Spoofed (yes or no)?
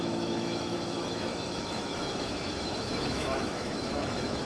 yes